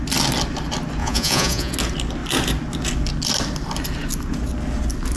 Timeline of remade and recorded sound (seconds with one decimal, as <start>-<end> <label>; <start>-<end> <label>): 0.0-1.0 recorded; 1.0-1.7 remade; 1.7-5.2 recorded